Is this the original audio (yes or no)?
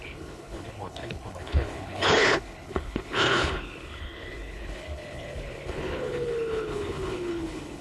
no